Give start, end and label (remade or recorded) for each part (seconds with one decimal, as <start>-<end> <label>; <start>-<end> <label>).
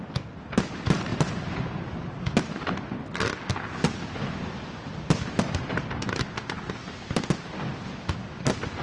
0.0-8.8 recorded